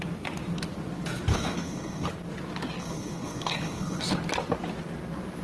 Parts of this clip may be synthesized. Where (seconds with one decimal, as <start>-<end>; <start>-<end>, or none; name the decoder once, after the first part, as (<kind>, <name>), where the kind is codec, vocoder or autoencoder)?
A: 1.3-2.1 (codec, HILCodec); 2.8-4.0